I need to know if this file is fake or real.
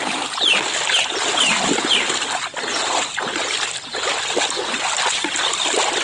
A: real